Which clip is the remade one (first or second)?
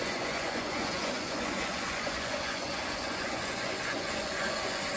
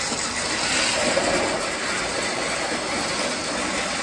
first